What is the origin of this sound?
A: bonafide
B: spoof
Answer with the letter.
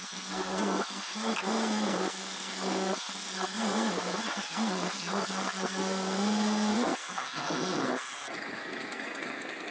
B